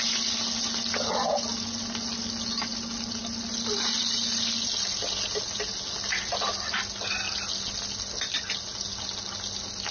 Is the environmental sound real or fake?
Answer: real